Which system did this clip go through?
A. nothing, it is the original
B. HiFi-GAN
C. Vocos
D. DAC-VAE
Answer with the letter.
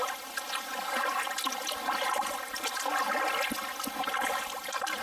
A